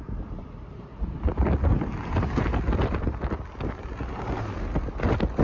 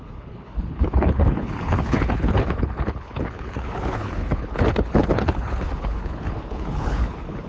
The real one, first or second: first